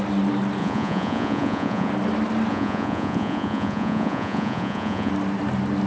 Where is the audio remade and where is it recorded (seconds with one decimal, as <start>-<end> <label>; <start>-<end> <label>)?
0.0-0.6 recorded; 0.6-1.9 remade; 1.9-2.5 recorded; 2.5-5.1 remade; 5.1-5.9 recorded